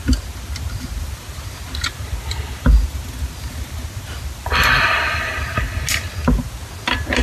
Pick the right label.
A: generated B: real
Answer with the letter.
B